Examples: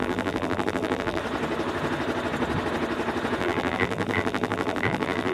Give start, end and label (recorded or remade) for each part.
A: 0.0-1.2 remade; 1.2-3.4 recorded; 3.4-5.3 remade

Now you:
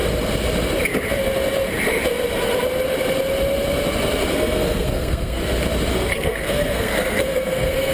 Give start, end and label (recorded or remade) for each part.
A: 0.0-4.3 recorded; 4.3-5.4 remade; 5.4-5.9 recorded; 5.9-7.9 remade

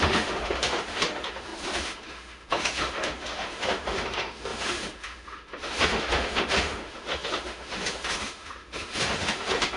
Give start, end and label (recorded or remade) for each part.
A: 0.0-9.8 remade